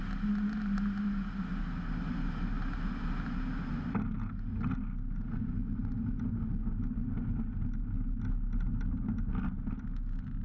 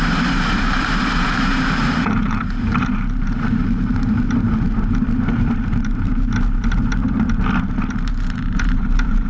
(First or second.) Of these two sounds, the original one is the first